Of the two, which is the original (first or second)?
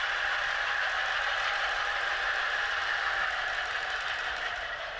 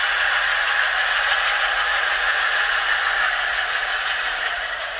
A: first